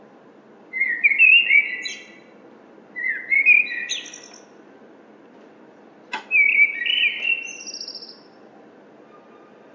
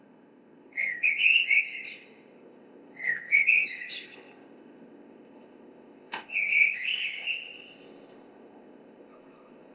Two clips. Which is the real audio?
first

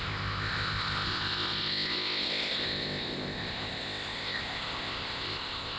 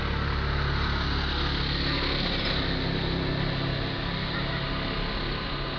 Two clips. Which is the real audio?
second